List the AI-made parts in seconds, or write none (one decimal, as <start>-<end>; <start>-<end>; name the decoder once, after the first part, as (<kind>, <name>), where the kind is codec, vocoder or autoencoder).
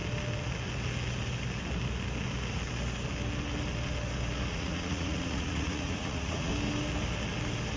4.5-6.5 (vocoder, Vocos)